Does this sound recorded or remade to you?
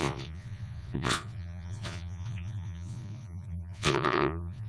remade